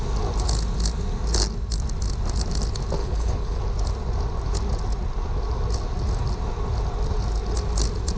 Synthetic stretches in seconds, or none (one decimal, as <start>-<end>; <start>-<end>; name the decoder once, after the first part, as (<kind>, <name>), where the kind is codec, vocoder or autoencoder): 3.0-3.6 (codec, HILCodec)